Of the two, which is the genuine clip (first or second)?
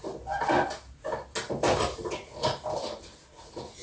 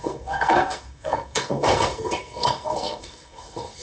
first